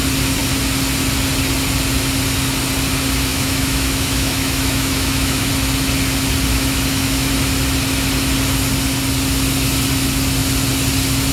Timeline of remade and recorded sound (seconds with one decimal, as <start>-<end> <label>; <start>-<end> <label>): 0.0-3.3 recorded; 3.3-5.5 remade; 5.5-6.5 recorded; 6.5-7.3 remade; 7.3-11.3 recorded